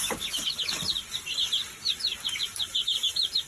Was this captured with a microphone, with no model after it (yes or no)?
yes